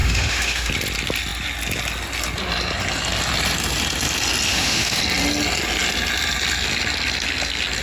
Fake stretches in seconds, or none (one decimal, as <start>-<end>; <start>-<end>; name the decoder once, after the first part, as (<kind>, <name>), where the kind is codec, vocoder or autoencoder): 0.0-0.7 (autoencoder, DAC-VAE); 4.5-5.0